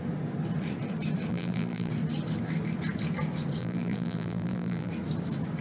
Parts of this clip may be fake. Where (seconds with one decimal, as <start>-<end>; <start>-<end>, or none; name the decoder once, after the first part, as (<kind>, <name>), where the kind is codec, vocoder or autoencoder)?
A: 1.3-1.9 (vocoder, BigVGAN v2); 3.6-4.9